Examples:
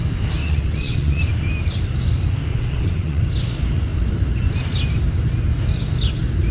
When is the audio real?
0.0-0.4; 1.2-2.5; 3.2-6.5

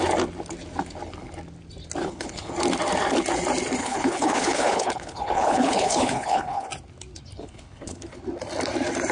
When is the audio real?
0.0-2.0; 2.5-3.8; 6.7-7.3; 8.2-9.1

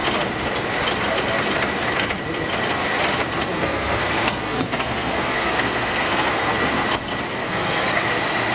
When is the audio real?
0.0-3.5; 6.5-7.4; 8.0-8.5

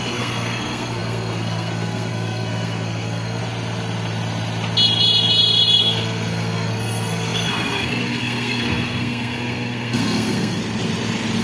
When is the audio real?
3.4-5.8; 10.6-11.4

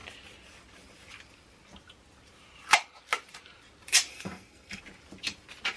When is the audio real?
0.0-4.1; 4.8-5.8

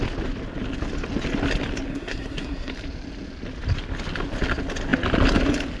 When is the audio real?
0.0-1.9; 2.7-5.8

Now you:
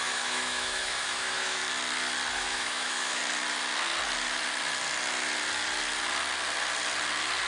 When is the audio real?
1.6-2.3; 3.2-7.5